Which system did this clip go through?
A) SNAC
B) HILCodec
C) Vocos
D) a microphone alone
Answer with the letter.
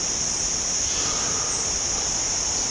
D